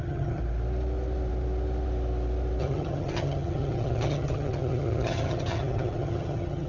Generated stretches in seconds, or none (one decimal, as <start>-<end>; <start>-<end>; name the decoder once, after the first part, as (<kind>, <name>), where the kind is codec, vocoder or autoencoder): 0.0-0.4 (vocoder, HiFi-GAN); 2.6-6.7